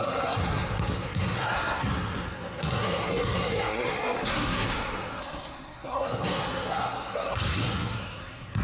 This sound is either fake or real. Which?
fake